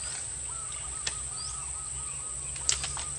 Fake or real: real